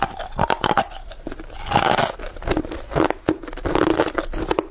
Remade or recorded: recorded